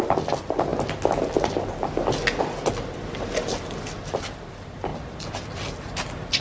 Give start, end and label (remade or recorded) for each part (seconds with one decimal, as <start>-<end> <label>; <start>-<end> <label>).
0.0-6.4 recorded